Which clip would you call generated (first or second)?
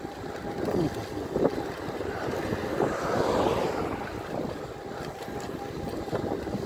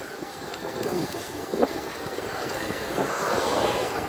second